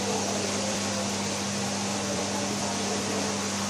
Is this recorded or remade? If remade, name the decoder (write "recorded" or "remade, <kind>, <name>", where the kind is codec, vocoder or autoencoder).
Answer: remade, vocoder, BigVGAN v2